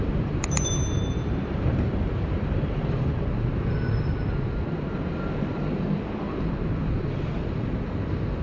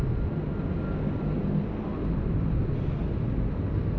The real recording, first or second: second